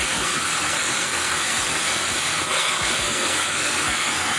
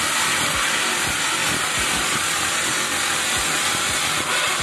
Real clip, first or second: second